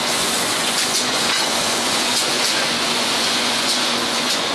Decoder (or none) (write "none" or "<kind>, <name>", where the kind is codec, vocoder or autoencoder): vocoder, Vocos